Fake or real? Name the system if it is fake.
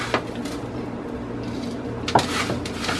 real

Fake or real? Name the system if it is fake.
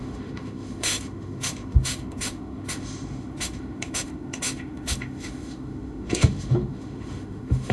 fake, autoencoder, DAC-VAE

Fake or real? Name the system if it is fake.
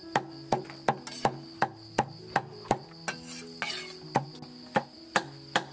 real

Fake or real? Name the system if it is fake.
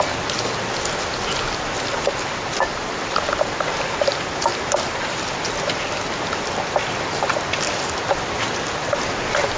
real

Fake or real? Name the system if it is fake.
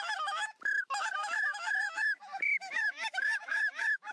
fake, autoencoder, DAC-VAE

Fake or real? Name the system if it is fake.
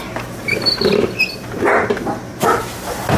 real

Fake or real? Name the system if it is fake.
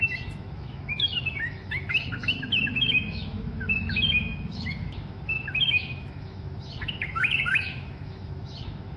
fake, autoencoder, DAC-VAE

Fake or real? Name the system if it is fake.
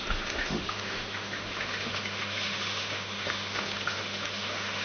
fake, autoencoder, DAC-VAE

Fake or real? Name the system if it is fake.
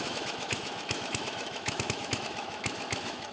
fake, autoencoder, DAC-VAE